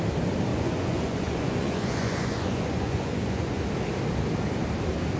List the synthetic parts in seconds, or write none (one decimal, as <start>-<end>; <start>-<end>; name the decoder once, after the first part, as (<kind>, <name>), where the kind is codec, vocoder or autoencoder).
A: 0.5-3.6 (vocoder, Vocos)